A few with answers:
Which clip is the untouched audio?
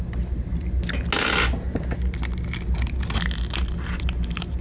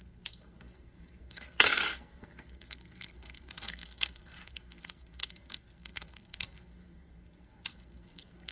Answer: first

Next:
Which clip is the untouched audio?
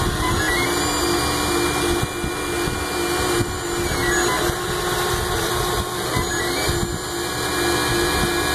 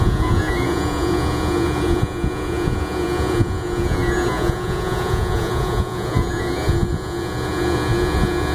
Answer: first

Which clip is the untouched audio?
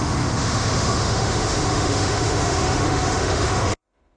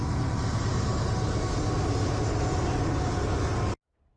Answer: second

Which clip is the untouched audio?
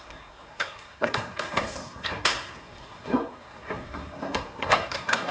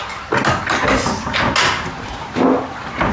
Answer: second